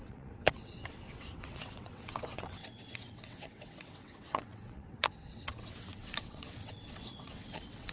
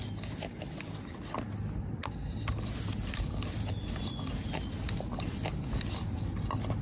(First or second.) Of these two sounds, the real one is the second